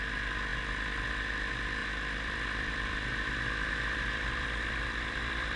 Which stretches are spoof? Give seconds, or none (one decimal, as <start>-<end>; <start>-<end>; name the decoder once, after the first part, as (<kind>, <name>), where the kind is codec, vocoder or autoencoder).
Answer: 1.8-5.6 (vocoder, BigVGAN v2)